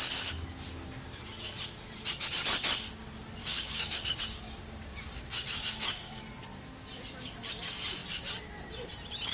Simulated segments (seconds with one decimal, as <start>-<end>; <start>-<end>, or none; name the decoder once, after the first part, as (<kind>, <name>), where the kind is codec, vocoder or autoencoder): 3.4-6.2 (codec, DAC)